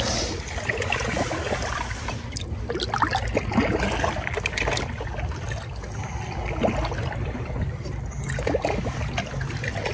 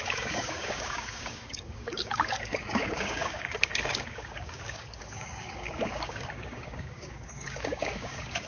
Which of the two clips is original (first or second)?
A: first